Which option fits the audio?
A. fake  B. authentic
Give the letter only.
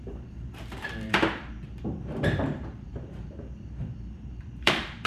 A